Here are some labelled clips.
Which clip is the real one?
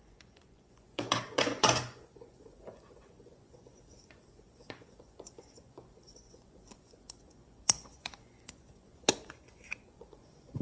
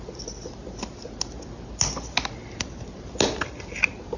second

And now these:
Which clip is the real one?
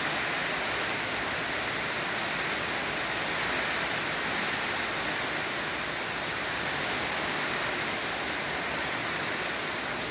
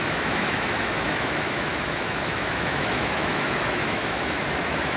first